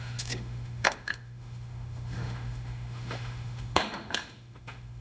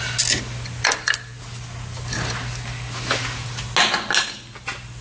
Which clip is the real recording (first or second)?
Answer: second